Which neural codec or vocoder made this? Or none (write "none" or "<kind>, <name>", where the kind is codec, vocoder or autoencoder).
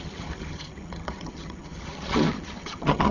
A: vocoder, HiFi-GAN